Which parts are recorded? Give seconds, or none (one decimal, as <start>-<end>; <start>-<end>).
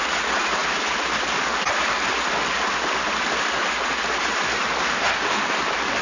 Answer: 0.0-4.9; 5.5-6.0